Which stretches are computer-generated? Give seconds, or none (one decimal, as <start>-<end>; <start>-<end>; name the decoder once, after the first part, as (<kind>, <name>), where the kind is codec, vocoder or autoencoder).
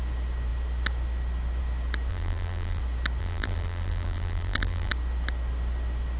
2.1-2.8 (vocoder, BigVGAN v2); 3.2-4.9